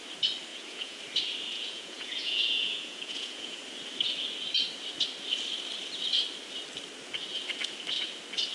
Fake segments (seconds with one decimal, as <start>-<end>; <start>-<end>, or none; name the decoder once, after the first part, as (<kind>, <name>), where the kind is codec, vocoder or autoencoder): 0.5-1.0 (vocoder, Vocos); 1.5-3.6